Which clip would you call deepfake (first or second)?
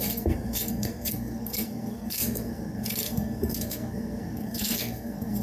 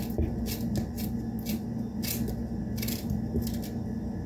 first